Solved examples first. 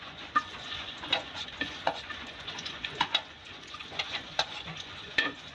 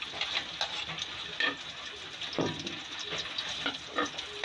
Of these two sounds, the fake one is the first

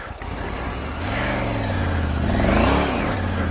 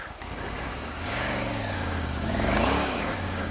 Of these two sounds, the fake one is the second